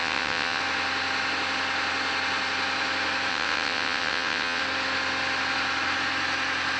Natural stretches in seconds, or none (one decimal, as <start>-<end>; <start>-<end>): 0.6-3.3; 4.6-6.8